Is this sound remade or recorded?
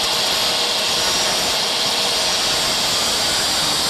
recorded